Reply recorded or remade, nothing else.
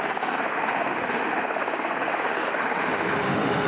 remade